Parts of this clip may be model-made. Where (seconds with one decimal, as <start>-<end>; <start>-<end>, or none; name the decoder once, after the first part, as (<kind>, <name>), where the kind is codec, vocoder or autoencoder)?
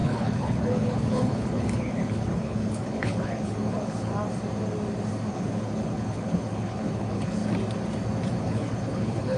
0.0-4.1 (codec, HILCodec); 5.3-7.4; 8.4-9.4